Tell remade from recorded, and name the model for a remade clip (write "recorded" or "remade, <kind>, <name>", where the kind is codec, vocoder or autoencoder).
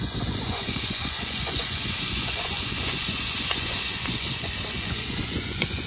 remade, vocoder, Vocos